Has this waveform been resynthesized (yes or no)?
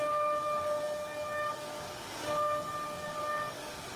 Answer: yes